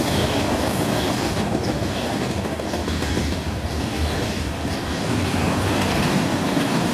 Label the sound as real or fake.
fake